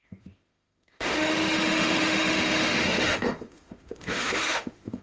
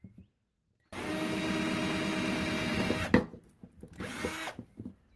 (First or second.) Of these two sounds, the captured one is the second